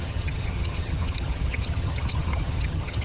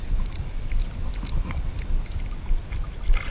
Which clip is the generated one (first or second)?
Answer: first